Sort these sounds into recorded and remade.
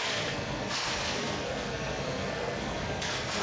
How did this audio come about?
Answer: remade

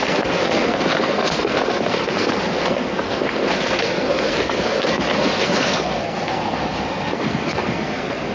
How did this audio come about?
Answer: remade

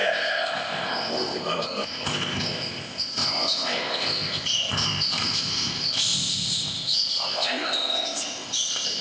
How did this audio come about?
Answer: remade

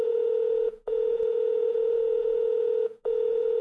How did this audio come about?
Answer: remade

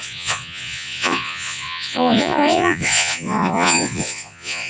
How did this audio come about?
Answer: remade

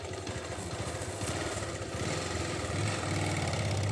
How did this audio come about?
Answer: recorded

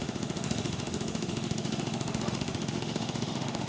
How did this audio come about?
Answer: remade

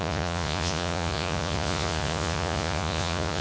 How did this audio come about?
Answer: remade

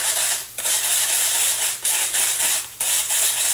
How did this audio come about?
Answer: recorded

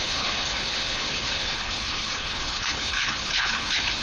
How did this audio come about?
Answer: remade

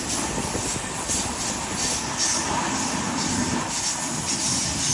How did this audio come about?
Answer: recorded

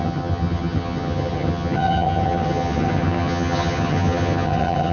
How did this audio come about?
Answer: remade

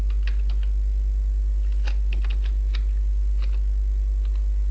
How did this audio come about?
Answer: recorded